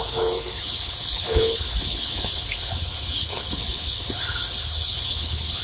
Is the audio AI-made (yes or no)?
yes